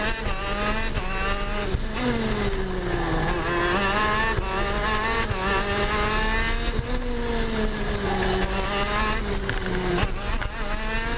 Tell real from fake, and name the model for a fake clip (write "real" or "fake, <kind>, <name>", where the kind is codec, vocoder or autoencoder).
real